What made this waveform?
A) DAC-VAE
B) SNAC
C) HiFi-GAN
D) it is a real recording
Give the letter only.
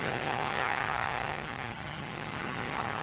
C